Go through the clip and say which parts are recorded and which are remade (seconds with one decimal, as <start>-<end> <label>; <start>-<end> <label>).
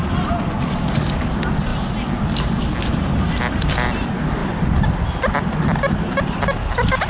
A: 0.0-4.4 recorded; 4.4-5.4 remade; 5.4-7.1 recorded